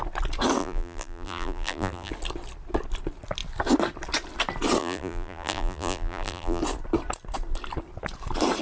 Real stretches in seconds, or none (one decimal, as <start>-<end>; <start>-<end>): 0.0-0.6; 2.1-4.8; 6.6-8.6

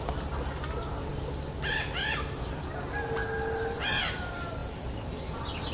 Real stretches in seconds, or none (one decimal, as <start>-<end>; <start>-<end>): 0.0-5.7

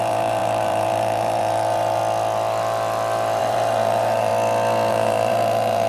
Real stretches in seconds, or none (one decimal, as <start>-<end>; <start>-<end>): 2.0-3.4; 4.3-4.9

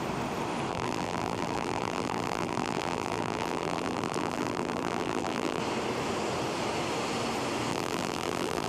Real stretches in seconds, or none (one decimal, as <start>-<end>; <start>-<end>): 0.0-0.7; 5.6-7.7

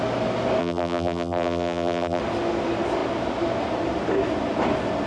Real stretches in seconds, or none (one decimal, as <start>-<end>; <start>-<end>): 0.0-0.6; 2.2-5.1